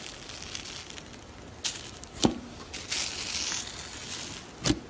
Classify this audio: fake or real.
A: real